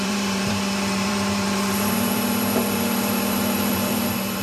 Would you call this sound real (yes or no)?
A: no